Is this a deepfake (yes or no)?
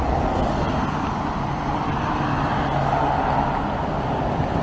no